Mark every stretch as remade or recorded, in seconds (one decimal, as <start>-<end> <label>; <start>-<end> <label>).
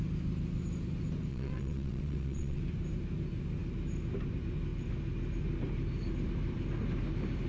0.0-1.3 recorded; 1.3-2.6 remade; 2.6-7.5 recorded